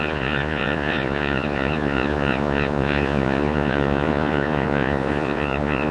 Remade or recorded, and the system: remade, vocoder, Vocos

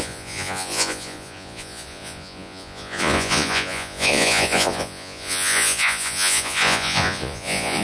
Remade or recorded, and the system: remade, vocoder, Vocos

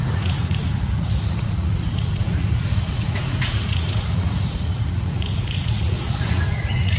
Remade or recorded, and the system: remade, vocoder, Vocos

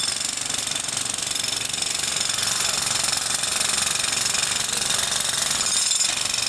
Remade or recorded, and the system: recorded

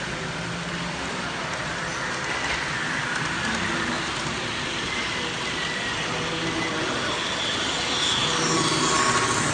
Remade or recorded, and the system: recorded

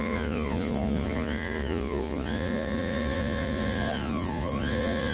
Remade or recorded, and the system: remade, vocoder, Vocos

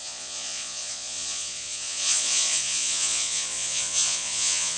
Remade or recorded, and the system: remade, vocoder, Vocos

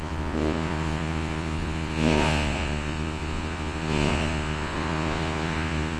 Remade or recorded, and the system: remade, vocoder, Vocos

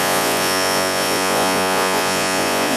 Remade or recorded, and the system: remade, vocoder, Vocos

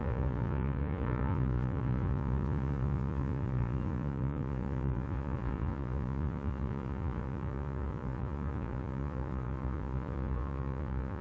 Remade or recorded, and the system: remade, vocoder, Vocos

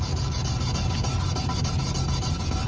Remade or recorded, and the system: recorded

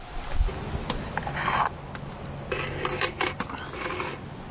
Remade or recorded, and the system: recorded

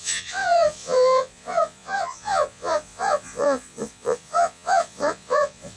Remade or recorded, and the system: remade, vocoder, Vocos